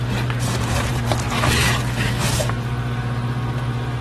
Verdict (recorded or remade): remade